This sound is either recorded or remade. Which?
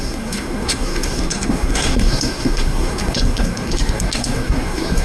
remade